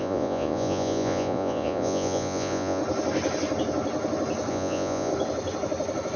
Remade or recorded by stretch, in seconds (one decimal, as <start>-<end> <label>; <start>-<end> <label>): 0.0-2.8 remade; 2.8-4.5 recorded; 4.5-5.1 remade; 5.1-6.2 recorded